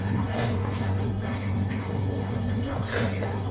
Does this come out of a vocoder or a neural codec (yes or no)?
yes